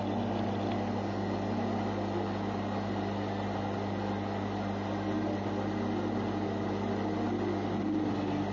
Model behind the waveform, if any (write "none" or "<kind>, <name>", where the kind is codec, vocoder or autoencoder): none